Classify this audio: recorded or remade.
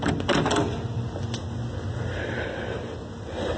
recorded